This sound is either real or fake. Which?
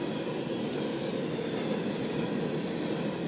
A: real